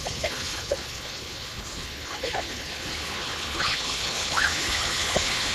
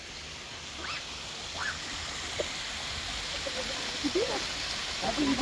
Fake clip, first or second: first